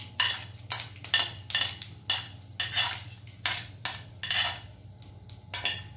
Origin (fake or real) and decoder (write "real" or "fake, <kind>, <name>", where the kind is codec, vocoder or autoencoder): real